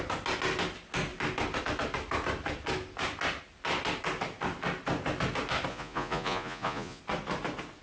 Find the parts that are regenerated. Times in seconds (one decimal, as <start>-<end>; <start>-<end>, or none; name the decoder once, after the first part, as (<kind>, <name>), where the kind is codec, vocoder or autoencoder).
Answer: 5.7-7.0 (vocoder, Vocos)